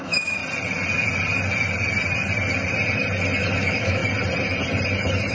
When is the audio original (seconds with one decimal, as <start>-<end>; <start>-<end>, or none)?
0.4-3.6; 4.0-5.3